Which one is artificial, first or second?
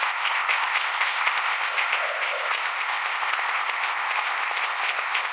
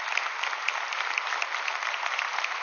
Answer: first